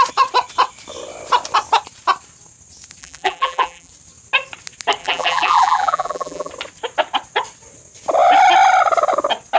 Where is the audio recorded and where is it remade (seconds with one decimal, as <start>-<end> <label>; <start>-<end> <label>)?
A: 0.0-3.0 recorded; 3.0-3.9 remade; 3.9-5.0 recorded; 5.0-6.5 remade; 6.5-9.6 recorded